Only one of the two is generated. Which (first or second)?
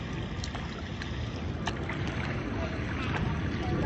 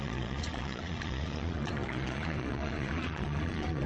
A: second